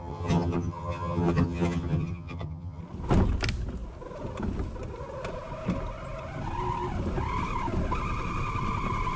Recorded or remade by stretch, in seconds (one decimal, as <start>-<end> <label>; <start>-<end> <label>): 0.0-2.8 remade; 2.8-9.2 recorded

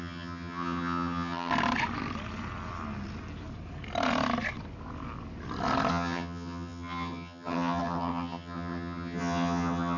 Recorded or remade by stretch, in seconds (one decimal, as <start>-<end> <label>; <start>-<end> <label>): 0.0-1.5 remade; 1.5-5.9 recorded; 5.9-10.0 remade

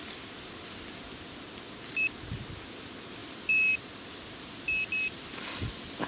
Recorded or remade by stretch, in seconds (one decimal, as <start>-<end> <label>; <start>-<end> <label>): 0.0-6.1 recorded